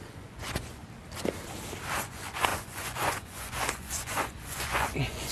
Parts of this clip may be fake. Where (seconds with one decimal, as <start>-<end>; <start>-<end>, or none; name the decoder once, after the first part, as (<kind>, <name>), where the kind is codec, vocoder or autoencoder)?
0.0-0.8 (vocoder, Vocos); 2.0-5.3